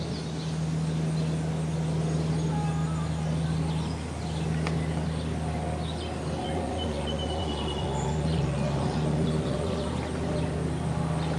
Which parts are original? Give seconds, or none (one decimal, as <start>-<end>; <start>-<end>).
0.0-6.4; 9.9-11.4